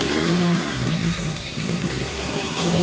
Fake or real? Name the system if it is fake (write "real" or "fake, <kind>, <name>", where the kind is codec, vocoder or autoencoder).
fake, codec, SNAC